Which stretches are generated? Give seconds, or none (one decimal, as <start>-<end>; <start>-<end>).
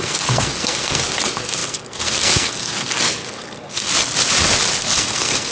0.0-3.9; 4.8-5.5